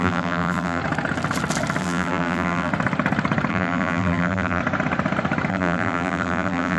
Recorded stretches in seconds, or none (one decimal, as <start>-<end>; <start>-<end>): 0.8-1.8; 2.7-3.5; 4.6-5.5